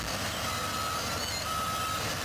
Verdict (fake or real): real